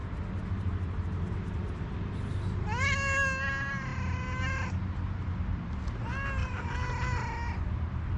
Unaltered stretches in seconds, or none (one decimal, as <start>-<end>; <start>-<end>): 0.0-8.2